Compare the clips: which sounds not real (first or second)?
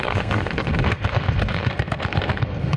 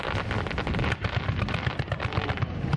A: first